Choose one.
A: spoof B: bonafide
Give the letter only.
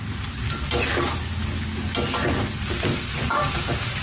B